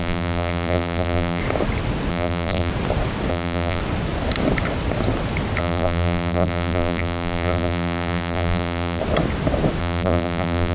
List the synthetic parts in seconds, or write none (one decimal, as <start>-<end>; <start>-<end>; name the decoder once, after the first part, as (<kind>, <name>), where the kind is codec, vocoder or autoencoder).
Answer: 0.0-1.4 (vocoder, BigVGAN v2); 2.1-2.7; 3.3-3.8; 5.6-9.0; 9.8-10.7